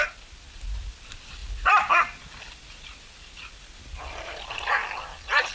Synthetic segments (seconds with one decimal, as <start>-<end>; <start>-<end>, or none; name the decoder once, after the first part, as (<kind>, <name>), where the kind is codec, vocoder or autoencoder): none